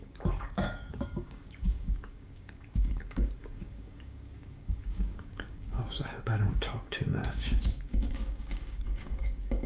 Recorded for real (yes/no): no